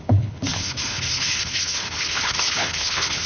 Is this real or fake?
fake